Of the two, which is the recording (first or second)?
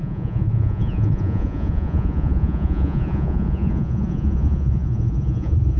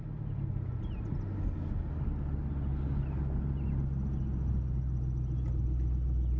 second